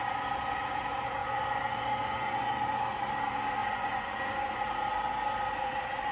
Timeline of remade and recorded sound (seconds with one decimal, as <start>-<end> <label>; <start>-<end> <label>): 0.0-1.2 recorded; 1.2-2.4 remade; 2.4-3.6 recorded; 3.6-4.6 remade; 4.6-6.1 recorded